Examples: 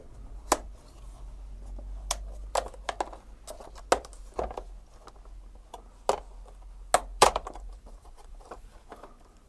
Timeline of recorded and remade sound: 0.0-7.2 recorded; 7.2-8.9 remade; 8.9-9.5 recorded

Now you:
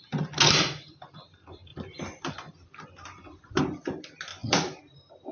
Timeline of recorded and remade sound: 0.0-1.7 recorded; 1.7-3.6 remade; 3.6-4.3 recorded; 4.3-5.3 remade

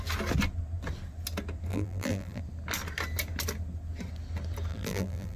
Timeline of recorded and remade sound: 0.0-1.7 recorded; 1.7-2.4 remade; 2.4-4.7 recorded; 4.7-5.4 remade

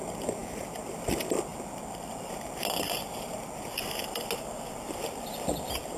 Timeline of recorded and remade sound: 0.0-6.0 recorded